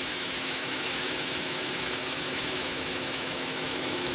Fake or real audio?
fake